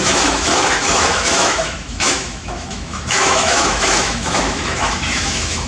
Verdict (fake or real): fake